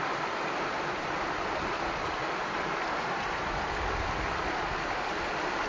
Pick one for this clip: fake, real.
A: real